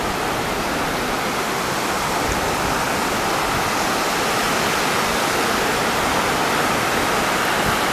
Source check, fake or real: real